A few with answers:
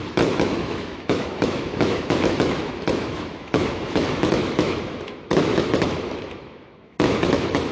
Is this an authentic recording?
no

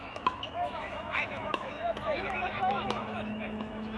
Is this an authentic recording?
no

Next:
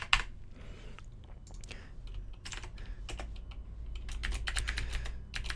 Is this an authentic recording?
yes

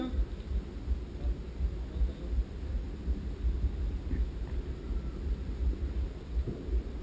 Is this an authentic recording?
yes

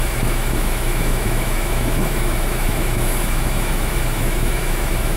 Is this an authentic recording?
no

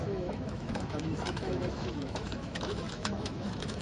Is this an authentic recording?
no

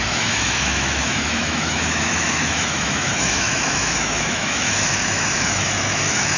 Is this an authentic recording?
no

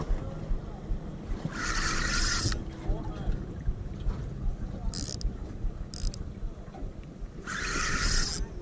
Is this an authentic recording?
yes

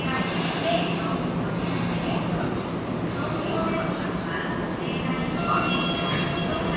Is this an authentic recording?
yes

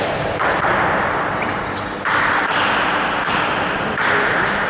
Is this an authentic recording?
yes